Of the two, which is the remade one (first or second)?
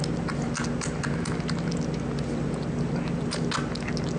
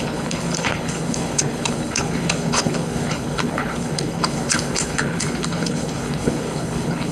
second